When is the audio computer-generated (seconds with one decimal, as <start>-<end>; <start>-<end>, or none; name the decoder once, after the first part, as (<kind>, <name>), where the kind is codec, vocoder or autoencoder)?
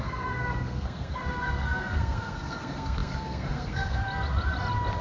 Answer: 0.0-4.0 (codec, SNAC)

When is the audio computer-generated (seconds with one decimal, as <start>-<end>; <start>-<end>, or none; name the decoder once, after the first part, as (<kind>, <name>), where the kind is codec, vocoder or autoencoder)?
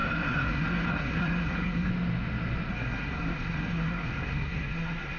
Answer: 0.0-1.9 (codec, SNAC); 2.7-5.2